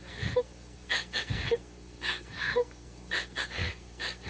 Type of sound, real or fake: fake